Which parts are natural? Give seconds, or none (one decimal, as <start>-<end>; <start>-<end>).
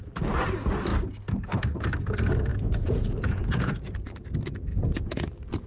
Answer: 0.0-2.5; 3.9-4.7; 5.3-5.7